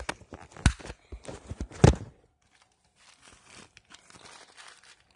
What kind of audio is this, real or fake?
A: real